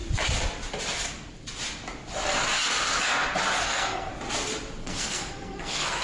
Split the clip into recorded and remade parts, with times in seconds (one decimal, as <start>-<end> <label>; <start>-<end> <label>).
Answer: 0.0-3.6 recorded; 3.6-4.1 remade; 4.1-4.8 recorded; 4.8-6.0 remade